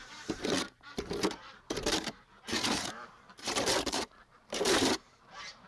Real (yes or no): no